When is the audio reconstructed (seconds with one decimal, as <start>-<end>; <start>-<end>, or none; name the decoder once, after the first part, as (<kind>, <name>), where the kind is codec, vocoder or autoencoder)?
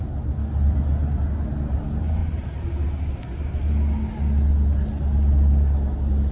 none